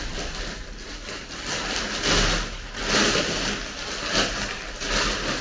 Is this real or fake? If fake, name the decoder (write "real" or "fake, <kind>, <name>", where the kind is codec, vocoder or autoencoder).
real